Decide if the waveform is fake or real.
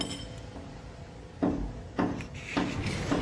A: real